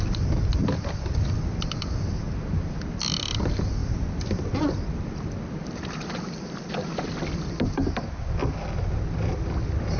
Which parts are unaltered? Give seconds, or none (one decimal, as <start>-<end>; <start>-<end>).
0.0-0.6; 1.3-3.8; 7.2-10.0